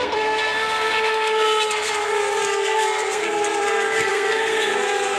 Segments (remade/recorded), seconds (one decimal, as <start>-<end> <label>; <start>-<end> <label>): 0.0-5.2 remade